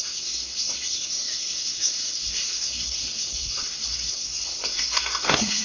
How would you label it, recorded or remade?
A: remade